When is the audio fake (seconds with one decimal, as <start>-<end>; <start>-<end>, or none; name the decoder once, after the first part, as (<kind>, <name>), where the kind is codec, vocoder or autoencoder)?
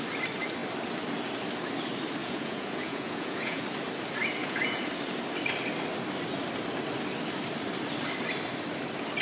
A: 2.2-3.6 (vocoder, Vocos); 4.4-4.9